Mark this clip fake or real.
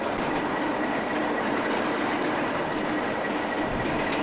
real